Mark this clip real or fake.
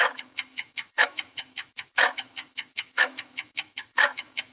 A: fake